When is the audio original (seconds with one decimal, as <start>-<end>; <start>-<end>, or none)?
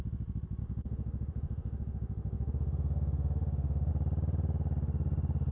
0.0-0.6; 3.9-5.5